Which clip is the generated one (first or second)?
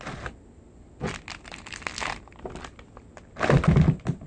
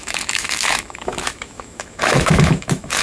second